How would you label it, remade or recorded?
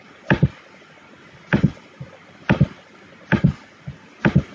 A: recorded